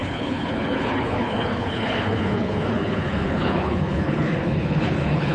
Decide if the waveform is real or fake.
fake